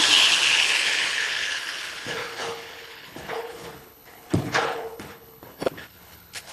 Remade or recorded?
remade